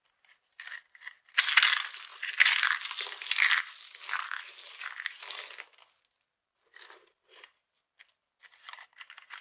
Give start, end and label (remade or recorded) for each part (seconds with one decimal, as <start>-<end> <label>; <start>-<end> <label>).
0.0-9.4 recorded

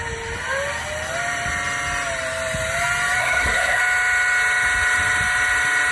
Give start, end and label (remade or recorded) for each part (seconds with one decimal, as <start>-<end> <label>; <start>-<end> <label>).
0.0-3.2 recorded; 3.2-3.8 remade; 3.8-5.9 recorded

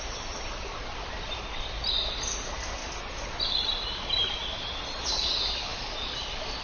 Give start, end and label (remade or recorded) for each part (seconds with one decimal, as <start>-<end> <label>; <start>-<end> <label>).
0.0-6.6 recorded

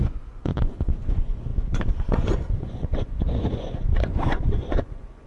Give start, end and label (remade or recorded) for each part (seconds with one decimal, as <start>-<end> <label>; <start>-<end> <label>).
0.0-5.3 remade

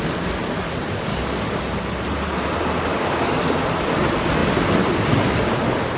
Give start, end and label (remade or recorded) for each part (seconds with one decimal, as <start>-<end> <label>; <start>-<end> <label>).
0.0-1.1 recorded; 1.1-1.6 remade; 1.6-2.9 recorded; 2.9-3.6 remade; 3.6-6.0 recorded

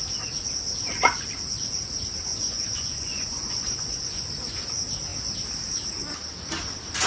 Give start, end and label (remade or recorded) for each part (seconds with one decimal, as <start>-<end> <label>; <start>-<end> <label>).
0.0-2.3 recorded; 2.3-4.3 remade; 4.3-7.1 recorded

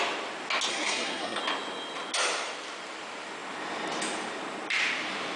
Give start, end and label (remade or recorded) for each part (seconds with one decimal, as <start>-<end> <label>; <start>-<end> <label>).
0.0-0.7 recorded; 0.7-1.4 remade; 1.4-5.4 recorded